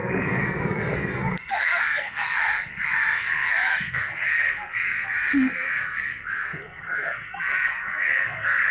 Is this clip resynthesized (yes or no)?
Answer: yes